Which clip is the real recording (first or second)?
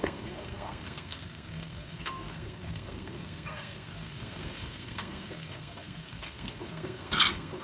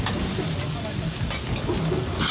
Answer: second